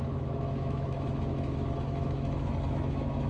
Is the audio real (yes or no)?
no